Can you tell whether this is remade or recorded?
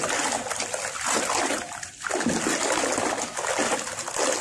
recorded